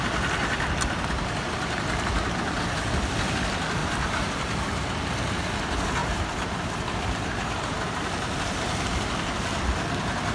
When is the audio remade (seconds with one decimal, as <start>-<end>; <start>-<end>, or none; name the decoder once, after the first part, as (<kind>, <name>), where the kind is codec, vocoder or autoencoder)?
3.8-4.9 (vocoder, BigVGAN v2); 6.0-8.5